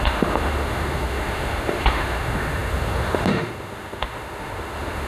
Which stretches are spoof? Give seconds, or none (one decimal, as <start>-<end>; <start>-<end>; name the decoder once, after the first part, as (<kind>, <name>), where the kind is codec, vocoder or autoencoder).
0.0-5.1 (autoencoder, DAC-VAE)